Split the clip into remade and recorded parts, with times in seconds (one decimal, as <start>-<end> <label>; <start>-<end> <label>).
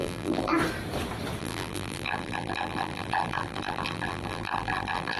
0.0-0.5 remade; 0.5-1.4 recorded; 1.4-5.2 remade